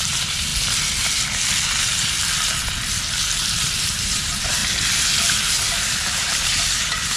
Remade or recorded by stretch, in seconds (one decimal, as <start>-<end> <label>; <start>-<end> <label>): 0.0-0.5 remade; 0.5-3.2 recorded; 3.2-4.6 remade; 4.6-5.9 recorded; 5.9-7.2 remade